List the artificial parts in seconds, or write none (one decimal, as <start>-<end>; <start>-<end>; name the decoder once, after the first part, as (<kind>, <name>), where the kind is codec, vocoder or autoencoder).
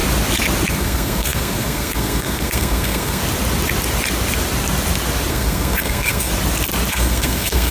0.7-3.2 (codec, SNAC); 5.3-6.3; 6.9-7.7